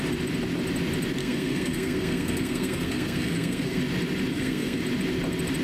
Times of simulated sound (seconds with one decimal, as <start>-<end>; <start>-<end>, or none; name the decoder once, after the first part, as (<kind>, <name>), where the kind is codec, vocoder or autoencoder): 1.2-3.8 (codec, SNAC); 4.3-4.8